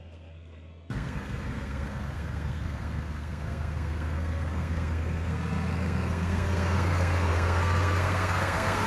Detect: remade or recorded remade